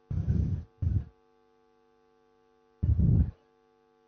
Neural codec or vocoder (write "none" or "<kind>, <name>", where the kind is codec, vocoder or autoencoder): none